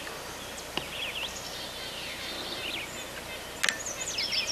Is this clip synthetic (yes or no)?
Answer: no